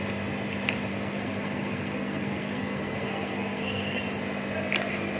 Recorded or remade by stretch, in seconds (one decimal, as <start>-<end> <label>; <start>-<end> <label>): 0.0-0.9 recorded; 0.9-4.0 remade; 4.0-5.2 recorded